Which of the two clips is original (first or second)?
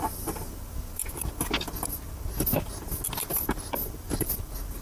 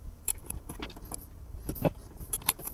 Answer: first